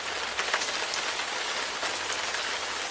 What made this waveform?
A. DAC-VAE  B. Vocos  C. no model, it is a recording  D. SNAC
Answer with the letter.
C